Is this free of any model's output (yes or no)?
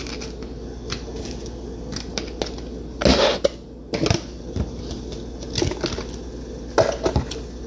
yes